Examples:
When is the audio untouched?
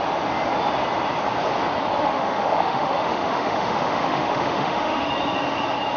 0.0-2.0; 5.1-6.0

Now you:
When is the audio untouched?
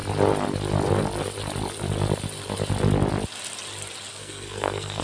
0.0-4.1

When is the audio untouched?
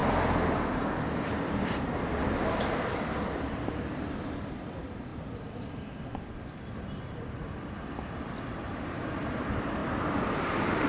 0.0-1.3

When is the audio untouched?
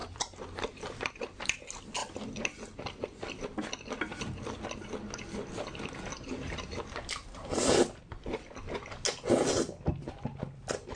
1.1-2.0; 3.4-6.1; 8.0-11.0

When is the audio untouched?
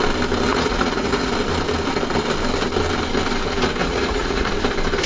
0.0-0.5; 1.3-3.8; 4.5-5.1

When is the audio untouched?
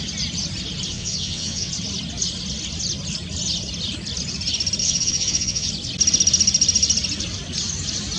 0.0-0.9; 1.7-4.8; 5.7-8.2